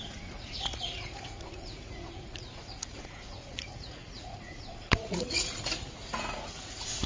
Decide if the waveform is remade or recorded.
remade